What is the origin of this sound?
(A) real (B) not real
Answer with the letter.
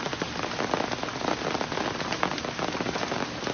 A